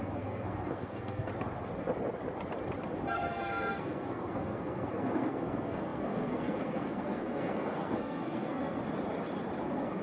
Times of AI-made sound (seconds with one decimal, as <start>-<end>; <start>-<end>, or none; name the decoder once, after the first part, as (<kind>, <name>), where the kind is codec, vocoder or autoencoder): 0.0-1.3 (codec, SNAC); 3.1-8.8; 9.6-10.0